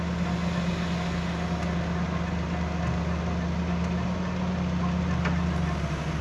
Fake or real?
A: real